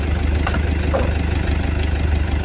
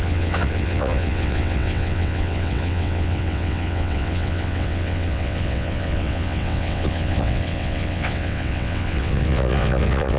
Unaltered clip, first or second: first